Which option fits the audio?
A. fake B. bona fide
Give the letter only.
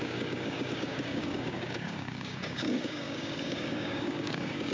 A